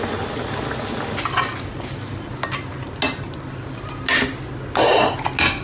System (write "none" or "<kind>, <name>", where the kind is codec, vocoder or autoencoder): none